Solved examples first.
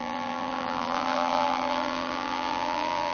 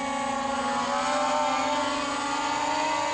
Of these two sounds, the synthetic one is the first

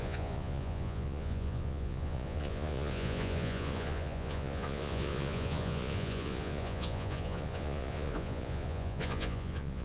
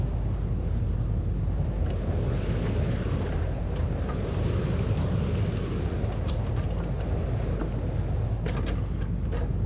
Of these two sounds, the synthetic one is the first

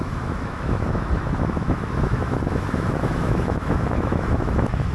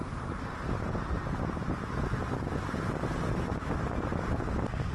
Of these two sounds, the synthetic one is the first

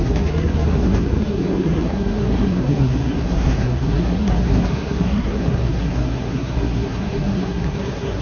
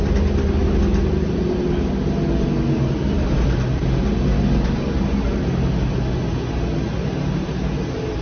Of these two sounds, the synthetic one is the first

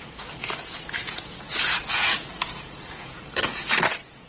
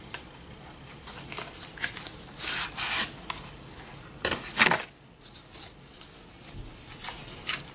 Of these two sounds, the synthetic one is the first